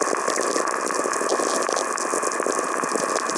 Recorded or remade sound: recorded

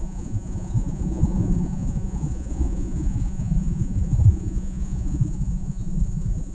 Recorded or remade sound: remade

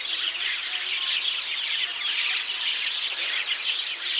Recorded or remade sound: recorded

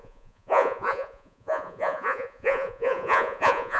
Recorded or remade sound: remade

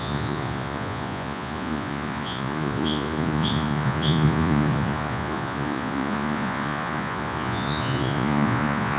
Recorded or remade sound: remade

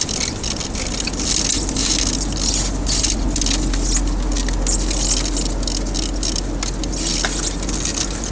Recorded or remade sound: recorded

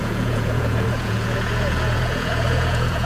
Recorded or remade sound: remade